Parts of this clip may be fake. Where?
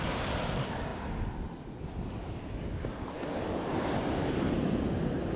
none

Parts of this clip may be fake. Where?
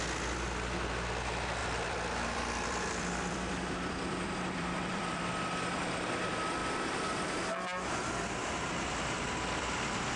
1.6-5.2 (vocoder, BigVGAN v2)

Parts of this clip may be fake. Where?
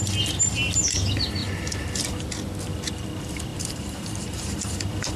1.4-2.0 (vocoder, BigVGAN v2); 3.5-5.2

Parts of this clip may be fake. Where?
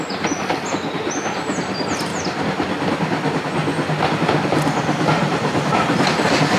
none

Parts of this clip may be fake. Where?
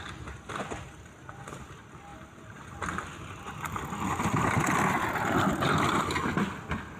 none